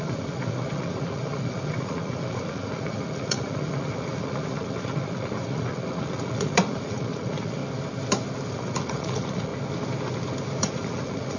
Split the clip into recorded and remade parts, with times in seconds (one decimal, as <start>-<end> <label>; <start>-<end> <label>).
0.0-7.6 remade; 7.6-8.5 recorded; 8.5-9.5 remade; 9.5-10.6 recorded; 10.6-11.4 remade